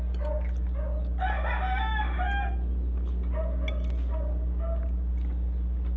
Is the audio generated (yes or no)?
no